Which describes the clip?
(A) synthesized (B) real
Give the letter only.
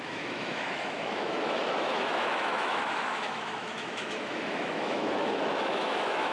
A